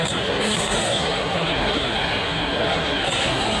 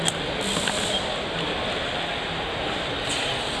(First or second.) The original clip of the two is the second